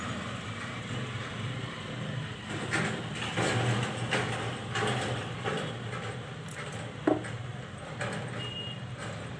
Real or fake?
real